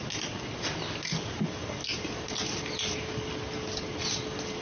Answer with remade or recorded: recorded